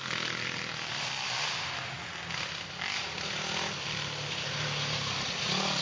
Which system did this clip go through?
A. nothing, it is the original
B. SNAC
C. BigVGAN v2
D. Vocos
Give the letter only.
A